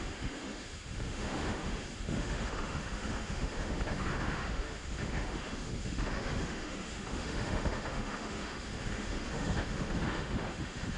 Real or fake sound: fake